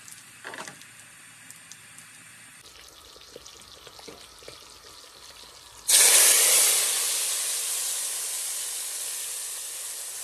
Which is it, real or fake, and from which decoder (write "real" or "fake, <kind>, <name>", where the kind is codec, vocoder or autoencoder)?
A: real